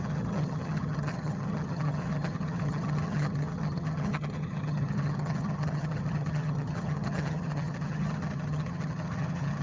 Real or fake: fake